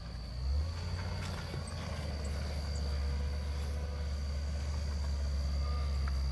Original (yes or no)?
yes